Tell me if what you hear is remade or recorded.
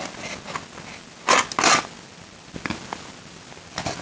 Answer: recorded